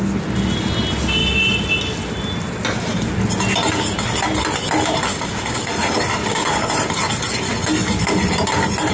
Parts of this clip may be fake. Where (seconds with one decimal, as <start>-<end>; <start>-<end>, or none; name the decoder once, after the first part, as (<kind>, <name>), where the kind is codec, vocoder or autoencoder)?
5.1-5.7 (codec, DAC); 6.2-6.7